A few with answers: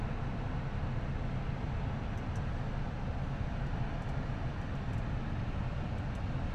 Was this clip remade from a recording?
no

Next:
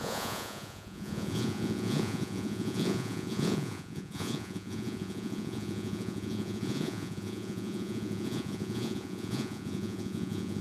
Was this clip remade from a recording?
yes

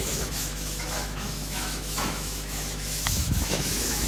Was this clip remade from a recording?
yes